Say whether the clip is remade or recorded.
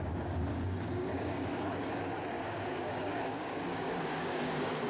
remade